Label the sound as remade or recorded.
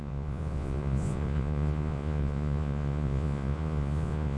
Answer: remade